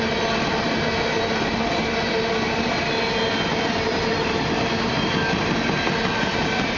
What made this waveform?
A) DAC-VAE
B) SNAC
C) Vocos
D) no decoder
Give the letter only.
D